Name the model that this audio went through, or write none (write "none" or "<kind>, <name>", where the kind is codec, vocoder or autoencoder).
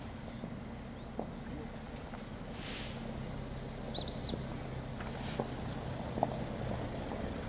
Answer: none